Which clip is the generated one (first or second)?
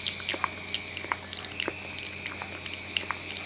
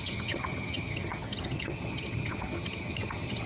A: second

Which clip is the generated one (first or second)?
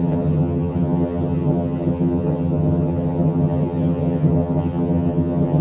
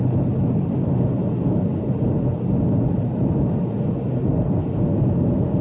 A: first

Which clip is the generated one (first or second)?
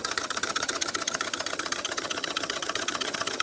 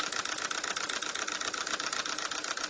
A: first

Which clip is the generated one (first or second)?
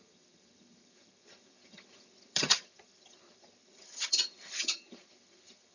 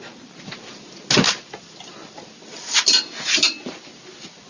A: first